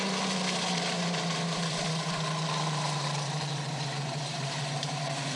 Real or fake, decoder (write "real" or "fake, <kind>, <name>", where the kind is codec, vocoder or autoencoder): fake, vocoder, BigVGAN v2